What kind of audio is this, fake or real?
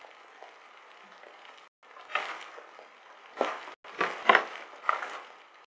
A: real